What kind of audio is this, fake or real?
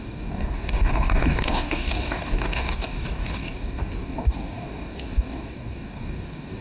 fake